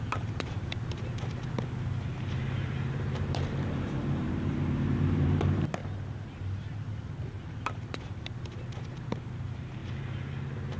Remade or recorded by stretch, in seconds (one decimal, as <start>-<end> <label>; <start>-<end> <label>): 0.0-1.4 remade; 1.4-2.1 recorded; 2.1-5.8 remade; 5.8-7.0 recorded; 7.0-10.8 remade